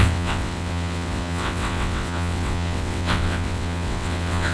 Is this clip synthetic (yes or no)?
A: yes